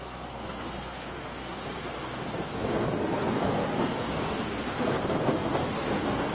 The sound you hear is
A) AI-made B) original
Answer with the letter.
A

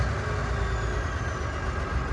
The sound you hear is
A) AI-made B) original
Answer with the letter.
B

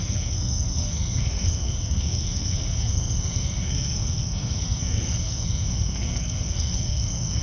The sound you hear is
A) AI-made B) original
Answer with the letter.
A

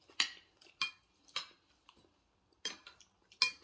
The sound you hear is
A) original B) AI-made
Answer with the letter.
A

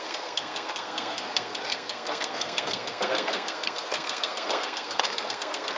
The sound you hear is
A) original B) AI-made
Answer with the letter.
B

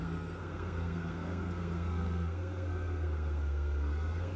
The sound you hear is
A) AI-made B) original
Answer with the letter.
A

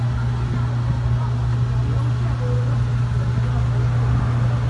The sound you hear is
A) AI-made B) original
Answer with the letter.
B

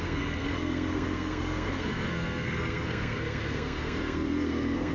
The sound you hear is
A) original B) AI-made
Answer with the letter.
B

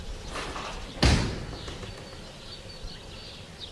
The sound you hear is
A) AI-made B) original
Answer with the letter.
B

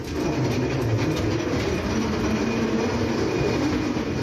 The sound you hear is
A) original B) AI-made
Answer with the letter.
A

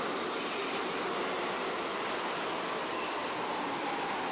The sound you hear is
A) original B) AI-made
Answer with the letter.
A